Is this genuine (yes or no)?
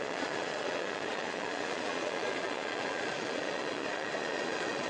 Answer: no